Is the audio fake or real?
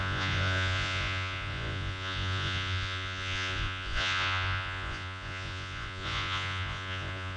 fake